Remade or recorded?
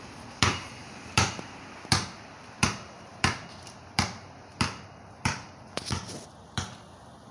remade